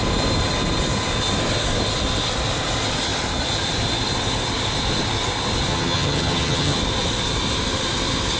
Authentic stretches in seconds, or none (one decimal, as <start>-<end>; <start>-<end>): 0.0-5.7; 6.8-8.4